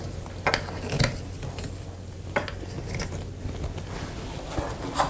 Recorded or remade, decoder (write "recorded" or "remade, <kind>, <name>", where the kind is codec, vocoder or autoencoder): recorded